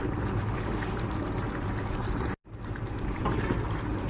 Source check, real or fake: fake